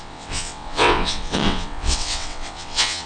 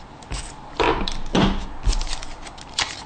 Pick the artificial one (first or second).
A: first